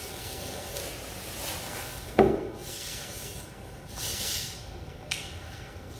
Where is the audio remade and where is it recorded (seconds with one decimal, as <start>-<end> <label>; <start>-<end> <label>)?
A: 0.0-0.8 remade; 0.8-1.6 recorded; 1.6-6.0 remade